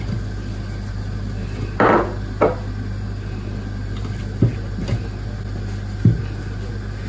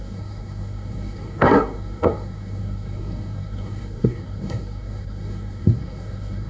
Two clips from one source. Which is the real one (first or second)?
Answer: first